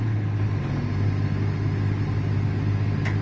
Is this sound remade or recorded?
recorded